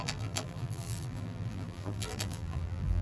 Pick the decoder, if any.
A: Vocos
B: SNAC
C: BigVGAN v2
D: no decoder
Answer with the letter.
C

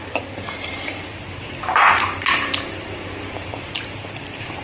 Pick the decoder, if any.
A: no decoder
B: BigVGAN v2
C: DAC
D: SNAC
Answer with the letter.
B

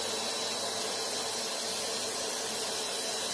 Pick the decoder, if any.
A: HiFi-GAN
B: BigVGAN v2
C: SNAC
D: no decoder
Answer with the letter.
D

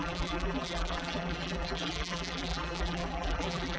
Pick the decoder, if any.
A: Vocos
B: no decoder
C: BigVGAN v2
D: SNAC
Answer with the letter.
C